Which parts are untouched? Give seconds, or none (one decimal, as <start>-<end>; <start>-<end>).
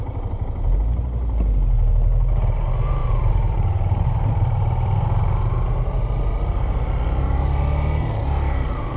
0.0-3.0; 4.3-9.0